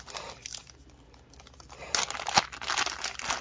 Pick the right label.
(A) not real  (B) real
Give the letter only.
B